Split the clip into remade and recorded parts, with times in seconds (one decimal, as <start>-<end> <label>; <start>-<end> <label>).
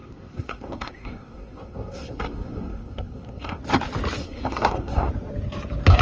0.0-3.6 remade; 3.6-4.2 recorded; 4.2-5.1 remade; 5.1-6.0 recorded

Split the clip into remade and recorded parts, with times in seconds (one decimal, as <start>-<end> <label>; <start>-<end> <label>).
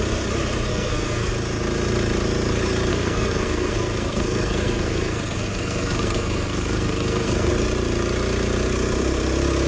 0.0-0.7 recorded; 0.7-1.3 remade; 1.3-2.9 recorded; 2.9-7.5 remade; 7.5-9.7 recorded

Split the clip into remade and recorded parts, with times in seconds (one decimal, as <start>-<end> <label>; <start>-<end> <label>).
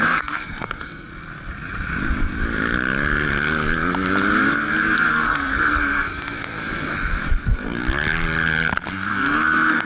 0.0-1.1 remade; 1.1-5.1 recorded; 5.1-7.8 remade; 7.8-8.9 recorded; 8.9-9.9 remade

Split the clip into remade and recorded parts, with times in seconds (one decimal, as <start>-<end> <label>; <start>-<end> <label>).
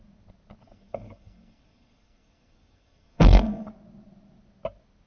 0.0-0.6 recorded; 0.6-3.7 remade; 3.7-5.1 recorded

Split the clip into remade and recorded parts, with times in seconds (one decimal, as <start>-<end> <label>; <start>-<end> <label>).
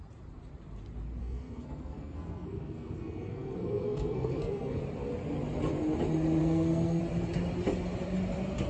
0.0-1.2 recorded; 1.2-4.8 remade; 4.8-6.4 recorded; 6.4-7.0 remade; 7.0-8.7 recorded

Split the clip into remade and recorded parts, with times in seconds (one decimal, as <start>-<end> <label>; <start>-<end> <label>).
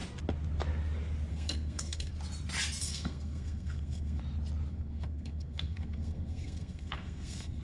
0.0-1.3 recorded; 1.3-2.1 remade; 2.1-2.8 recorded; 2.8-4.2 remade; 4.2-4.7 recorded; 4.7-7.6 remade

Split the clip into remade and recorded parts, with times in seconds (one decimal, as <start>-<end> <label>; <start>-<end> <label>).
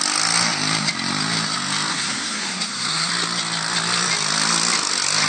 0.0-1.9 recorded; 1.9-3.1 remade; 3.1-5.3 recorded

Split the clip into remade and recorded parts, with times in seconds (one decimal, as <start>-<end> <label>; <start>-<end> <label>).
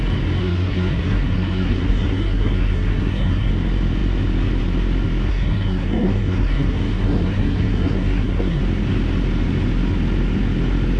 0.0-0.4 recorded; 0.4-3.5 remade; 3.5-5.3 recorded; 5.3-8.6 remade; 8.6-11.0 recorded